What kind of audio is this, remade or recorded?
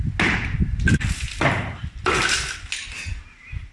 recorded